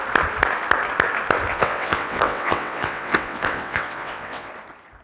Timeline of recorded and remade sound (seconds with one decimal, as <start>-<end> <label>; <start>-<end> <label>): 0.0-1.5 recorded; 1.5-4.5 remade; 4.5-5.0 recorded